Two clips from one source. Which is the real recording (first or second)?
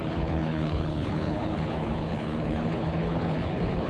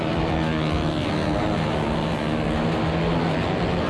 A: second